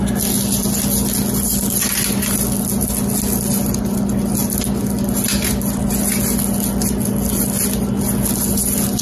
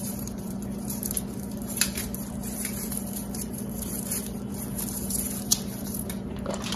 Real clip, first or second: first